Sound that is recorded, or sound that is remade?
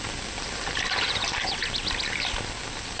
recorded